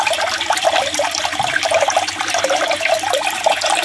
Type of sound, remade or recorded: recorded